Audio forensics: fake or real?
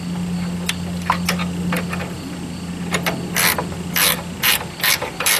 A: real